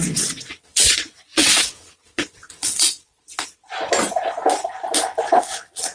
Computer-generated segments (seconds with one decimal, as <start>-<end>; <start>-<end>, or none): 0.0-3.1; 5.4-5.9